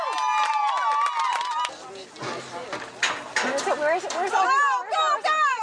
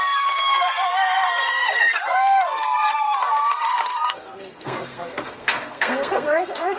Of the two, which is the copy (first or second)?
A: second